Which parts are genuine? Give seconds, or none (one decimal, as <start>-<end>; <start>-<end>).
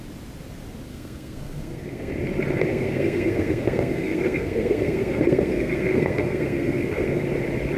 0.0-0.9; 2.1-2.7; 7.2-7.8